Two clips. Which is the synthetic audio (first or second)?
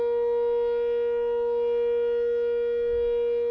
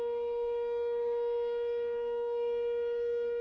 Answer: second